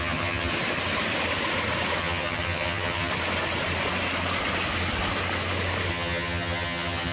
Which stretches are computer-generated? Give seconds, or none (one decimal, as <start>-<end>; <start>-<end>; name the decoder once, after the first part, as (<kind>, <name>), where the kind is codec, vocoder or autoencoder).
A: 0.0-0.5 (vocoder, HiFi-GAN); 2.0-3.1; 5.9-7.1